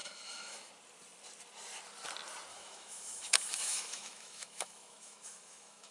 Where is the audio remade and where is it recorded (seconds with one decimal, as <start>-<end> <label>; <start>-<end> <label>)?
0.0-0.7 remade; 0.7-2.5 recorded; 2.5-5.9 remade